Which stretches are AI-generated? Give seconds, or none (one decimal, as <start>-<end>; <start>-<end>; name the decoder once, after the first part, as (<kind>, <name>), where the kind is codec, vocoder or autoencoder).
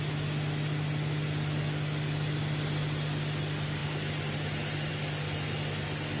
none